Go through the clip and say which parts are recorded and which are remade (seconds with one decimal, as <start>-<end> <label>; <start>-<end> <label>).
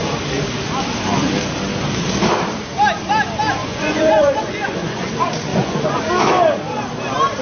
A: 0.0-3.6 recorded; 3.6-5.1 remade; 5.1-5.5 recorded; 5.5-6.0 remade; 6.0-7.4 recorded